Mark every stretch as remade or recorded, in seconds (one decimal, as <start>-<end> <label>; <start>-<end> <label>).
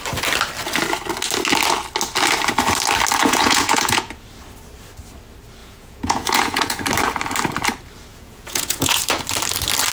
0.0-3.2 recorded; 3.2-4.1 remade; 4.1-5.6 recorded; 5.6-6.8 remade; 6.8-8.1 recorded; 8.1-9.0 remade; 9.0-9.9 recorded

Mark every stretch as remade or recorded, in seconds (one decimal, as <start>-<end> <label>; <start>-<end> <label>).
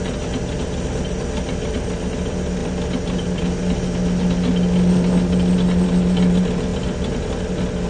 0.0-7.9 recorded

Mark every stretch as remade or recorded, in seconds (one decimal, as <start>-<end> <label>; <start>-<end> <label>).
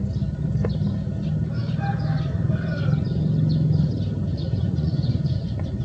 0.0-4.3 recorded; 4.3-5.8 remade